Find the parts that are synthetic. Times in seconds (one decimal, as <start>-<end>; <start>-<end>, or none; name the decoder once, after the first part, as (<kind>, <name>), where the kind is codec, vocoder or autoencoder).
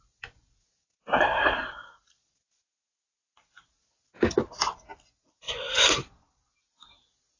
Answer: none